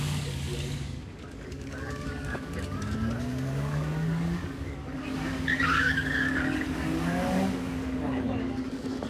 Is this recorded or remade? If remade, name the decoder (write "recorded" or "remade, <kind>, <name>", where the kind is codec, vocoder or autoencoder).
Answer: remade, codec, DAC